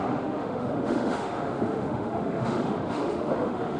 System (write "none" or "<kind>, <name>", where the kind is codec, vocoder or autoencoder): autoencoder, DAC-VAE